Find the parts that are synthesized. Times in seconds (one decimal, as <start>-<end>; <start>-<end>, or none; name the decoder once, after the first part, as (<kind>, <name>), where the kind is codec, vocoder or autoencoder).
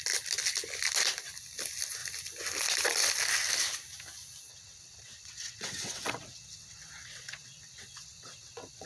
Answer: 4.5-8.9 (vocoder, WaveNeXt)